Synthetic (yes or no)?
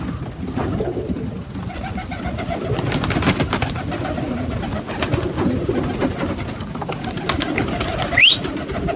no